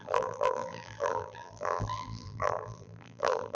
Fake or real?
fake